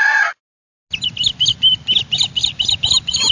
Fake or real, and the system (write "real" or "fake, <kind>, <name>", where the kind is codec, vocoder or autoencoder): real